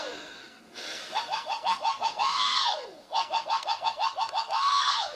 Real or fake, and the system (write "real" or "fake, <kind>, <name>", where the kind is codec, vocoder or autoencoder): fake, codec, SNAC